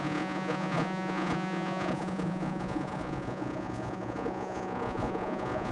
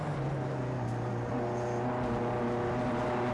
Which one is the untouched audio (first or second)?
second